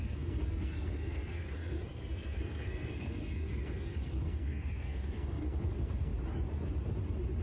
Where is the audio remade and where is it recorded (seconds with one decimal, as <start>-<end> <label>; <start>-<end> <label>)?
0.0-6.1 remade; 6.1-7.4 recorded